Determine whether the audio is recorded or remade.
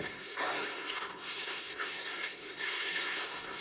remade